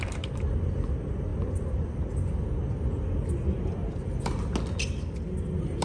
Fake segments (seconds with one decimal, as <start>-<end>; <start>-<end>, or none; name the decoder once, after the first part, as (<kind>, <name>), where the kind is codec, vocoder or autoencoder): none